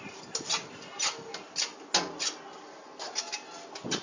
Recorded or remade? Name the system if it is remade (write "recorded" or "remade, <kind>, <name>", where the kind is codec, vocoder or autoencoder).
recorded